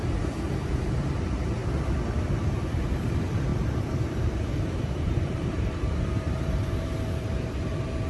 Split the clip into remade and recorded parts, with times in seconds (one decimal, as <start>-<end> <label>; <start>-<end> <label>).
0.0-1.6 remade; 1.6-2.7 recorded; 2.7-8.1 remade